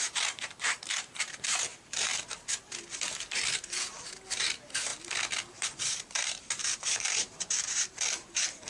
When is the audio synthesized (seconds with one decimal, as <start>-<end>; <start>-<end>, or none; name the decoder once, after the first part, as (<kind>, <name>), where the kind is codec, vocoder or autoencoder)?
0.0-4.9 (vocoder, BigVGAN v2); 5.5-8.7